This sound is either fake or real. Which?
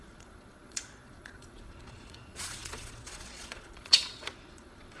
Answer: fake